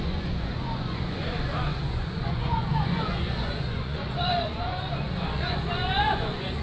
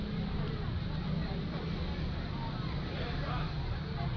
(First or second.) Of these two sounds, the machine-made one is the first